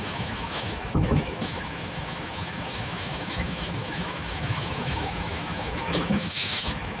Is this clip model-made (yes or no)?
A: yes